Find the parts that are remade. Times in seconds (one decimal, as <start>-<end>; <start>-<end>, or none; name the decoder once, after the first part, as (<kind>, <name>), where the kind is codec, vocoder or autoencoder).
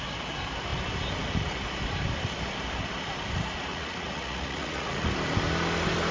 3.7-5.1 (vocoder, Vocos)